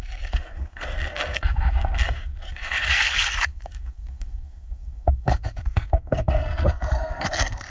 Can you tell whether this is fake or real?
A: fake